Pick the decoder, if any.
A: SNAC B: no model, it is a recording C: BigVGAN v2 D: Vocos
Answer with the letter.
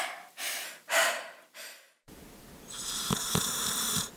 B